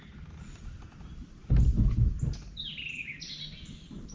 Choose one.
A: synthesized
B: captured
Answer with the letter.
B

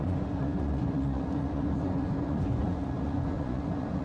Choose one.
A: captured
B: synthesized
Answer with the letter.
B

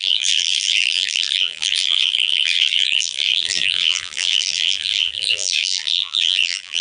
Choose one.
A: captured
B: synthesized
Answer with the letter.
B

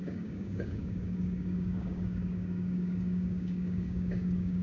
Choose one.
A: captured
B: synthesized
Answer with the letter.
B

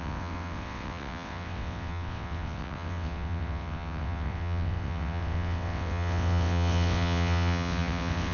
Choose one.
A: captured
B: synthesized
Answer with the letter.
B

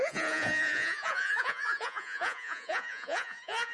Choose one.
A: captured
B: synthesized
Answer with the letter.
B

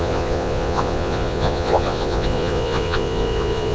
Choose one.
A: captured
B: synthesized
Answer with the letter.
B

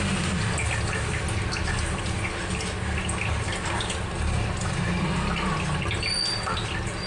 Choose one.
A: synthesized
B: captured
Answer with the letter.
B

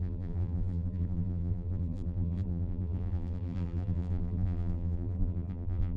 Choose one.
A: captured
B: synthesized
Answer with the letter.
B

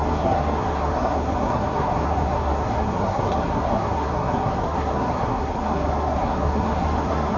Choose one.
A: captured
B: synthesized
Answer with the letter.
B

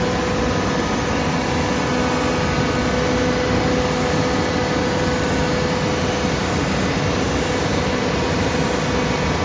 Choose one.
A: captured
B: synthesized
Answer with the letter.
A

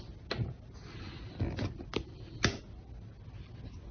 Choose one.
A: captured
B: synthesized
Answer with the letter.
A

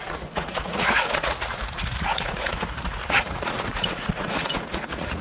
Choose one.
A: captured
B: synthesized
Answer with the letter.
B